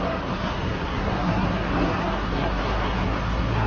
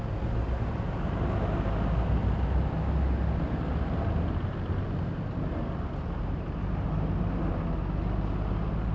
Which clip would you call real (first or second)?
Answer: second